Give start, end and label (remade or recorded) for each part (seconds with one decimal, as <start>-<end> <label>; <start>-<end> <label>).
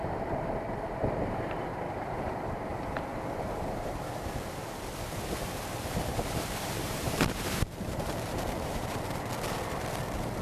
0.0-1.7 recorded; 1.7-2.3 remade; 2.3-2.7 recorded; 2.7-4.0 remade; 4.0-5.4 recorded; 5.4-9.0 remade; 9.0-10.4 recorded